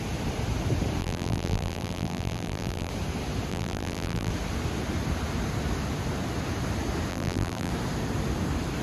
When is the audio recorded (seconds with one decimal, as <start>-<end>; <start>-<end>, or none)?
0.0-1.0; 2.9-3.5; 4.3-7.1; 7.7-8.8